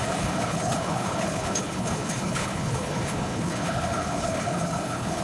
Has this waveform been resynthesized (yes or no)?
yes